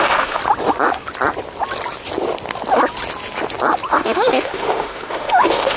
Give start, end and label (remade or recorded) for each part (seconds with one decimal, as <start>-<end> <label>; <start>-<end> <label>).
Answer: 0.0-0.4 remade; 0.4-3.9 recorded; 3.9-5.8 remade